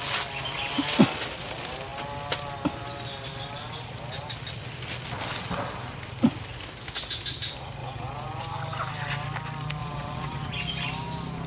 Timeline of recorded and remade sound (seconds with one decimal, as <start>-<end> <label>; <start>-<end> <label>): 0.0-7.8 recorded; 7.8-8.4 remade; 8.4-9.8 recorded; 9.8-10.5 remade; 10.5-11.5 recorded